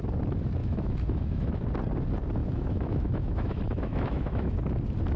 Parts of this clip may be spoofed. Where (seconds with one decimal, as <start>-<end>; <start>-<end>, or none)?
0.6-1.6; 2.4-4.6